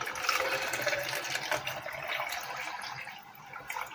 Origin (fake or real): real